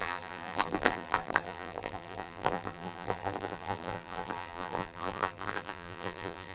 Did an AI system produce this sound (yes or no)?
yes